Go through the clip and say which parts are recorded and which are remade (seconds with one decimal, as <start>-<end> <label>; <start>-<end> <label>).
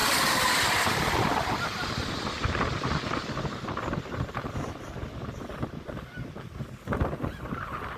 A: 0.0-8.0 recorded